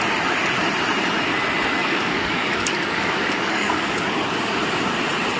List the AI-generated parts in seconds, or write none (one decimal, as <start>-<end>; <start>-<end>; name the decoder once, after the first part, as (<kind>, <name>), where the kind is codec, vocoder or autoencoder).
1.8-4.6 (codec, DAC)